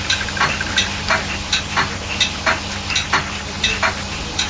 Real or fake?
real